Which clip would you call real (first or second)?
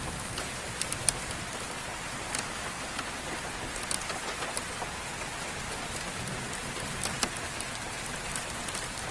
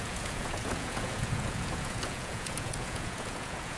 first